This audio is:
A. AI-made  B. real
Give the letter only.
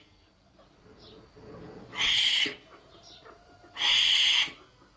B